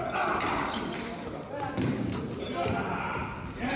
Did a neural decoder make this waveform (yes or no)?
no